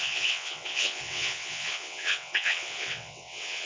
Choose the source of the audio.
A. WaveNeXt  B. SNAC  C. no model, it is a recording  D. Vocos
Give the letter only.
A